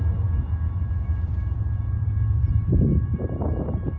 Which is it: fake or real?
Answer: fake